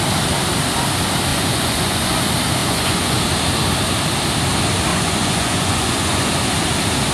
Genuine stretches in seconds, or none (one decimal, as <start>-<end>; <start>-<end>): 0.0-1.3; 2.2-2.6; 3.2-4.9; 6.3-7.1